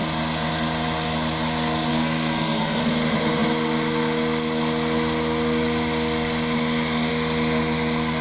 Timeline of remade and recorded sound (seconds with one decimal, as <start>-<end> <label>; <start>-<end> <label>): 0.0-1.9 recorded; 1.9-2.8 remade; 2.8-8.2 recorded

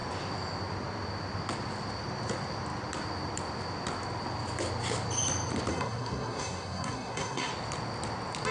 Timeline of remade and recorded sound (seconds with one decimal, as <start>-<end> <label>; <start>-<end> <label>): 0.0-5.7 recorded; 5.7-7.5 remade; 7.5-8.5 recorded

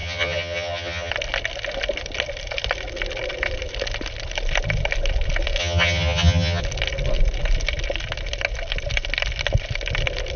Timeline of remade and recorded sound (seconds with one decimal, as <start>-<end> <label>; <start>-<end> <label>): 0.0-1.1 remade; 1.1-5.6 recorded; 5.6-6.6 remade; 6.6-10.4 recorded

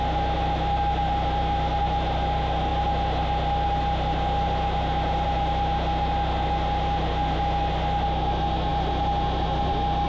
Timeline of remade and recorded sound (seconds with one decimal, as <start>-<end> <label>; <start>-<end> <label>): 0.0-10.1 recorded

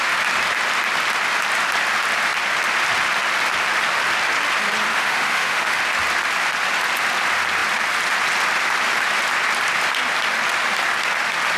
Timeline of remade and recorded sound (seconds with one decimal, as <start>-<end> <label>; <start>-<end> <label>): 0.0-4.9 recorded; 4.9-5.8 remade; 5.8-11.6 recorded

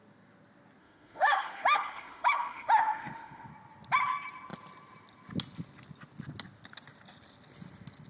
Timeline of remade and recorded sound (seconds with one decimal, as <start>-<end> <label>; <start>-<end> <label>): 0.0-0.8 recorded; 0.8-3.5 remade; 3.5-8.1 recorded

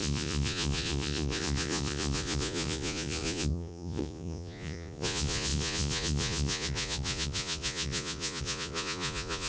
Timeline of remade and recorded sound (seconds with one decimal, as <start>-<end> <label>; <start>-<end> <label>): 0.0-9.5 remade